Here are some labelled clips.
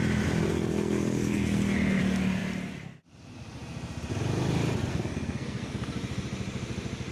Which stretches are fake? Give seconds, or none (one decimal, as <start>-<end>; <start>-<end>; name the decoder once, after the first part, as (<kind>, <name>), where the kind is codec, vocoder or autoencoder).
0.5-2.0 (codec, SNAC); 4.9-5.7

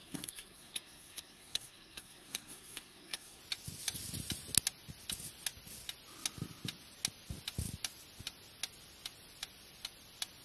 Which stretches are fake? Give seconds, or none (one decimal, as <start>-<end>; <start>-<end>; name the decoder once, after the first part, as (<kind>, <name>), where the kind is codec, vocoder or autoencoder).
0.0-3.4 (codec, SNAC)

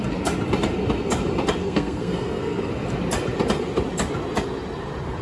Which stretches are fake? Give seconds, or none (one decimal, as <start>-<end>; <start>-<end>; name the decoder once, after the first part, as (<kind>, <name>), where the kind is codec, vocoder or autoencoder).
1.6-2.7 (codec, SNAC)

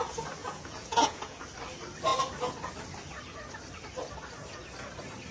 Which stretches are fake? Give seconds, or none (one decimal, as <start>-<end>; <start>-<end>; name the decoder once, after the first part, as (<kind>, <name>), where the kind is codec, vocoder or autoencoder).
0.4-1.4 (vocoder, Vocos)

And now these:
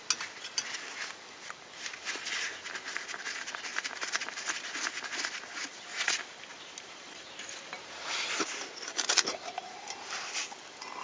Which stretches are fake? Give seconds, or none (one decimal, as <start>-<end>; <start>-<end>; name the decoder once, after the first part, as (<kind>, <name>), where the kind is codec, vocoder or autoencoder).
3.7-4.5 (vocoder, BigVGAN v2); 6.5-10.3

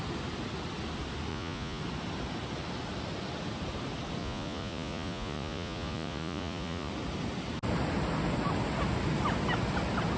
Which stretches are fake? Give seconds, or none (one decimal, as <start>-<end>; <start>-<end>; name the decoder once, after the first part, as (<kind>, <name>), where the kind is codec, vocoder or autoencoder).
1.3-1.8 (vocoder, Vocos); 4.2-6.9